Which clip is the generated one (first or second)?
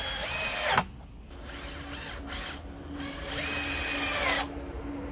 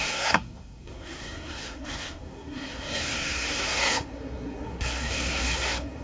second